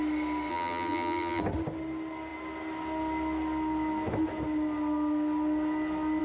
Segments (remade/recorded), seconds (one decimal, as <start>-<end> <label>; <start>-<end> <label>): 0.0-0.5 recorded; 0.5-1.4 remade; 1.4-6.2 recorded